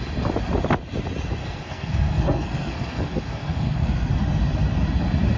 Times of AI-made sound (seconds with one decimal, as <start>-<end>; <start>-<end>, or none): 1.4-4.1